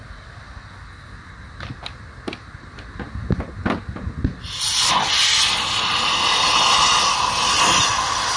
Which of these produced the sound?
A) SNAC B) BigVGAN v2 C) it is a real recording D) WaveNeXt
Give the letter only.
C